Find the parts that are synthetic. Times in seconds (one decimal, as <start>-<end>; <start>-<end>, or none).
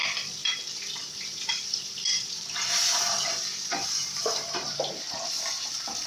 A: 1.2-2.9; 4.0-6.1